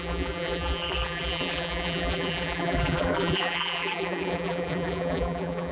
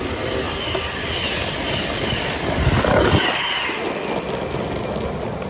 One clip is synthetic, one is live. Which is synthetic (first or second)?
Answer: first